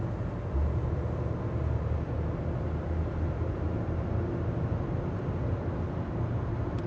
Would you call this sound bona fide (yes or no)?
yes